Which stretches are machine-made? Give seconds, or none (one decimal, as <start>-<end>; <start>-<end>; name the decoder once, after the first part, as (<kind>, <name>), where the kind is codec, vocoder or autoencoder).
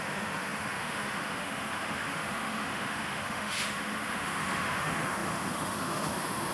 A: 0.0-6.5 (autoencoder, DAC-VAE)